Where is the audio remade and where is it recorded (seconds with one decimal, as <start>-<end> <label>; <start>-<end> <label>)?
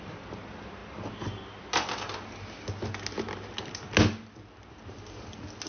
0.0-5.7 recorded